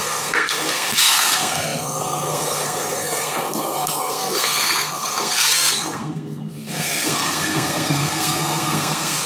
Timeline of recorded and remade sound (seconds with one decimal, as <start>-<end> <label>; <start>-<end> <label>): 0.0-9.3 remade